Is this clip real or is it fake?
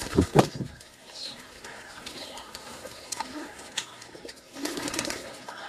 fake